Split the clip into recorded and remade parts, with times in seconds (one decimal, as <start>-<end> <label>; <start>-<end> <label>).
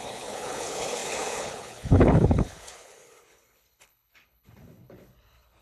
0.0-5.6 remade